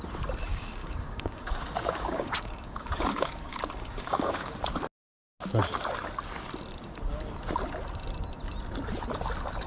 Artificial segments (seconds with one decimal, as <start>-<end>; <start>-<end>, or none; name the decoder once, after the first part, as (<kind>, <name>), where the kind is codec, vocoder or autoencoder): 0.5-4.5 (codec, DAC)